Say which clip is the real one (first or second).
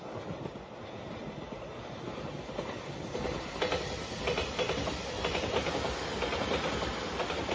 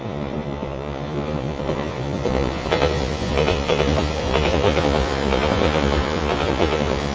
first